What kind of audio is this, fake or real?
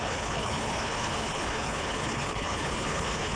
fake